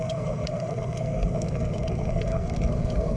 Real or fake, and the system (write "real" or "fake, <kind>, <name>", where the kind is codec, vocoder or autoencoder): fake, codec, SNAC